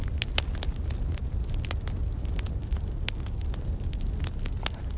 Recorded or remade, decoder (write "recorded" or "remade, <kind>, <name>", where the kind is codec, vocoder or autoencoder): recorded